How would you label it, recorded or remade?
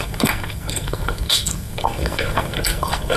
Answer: remade